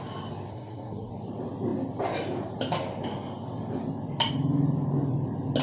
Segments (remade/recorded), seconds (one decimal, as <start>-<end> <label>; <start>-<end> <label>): 0.0-0.5 recorded; 0.5-1.1 remade; 1.1-5.6 recorded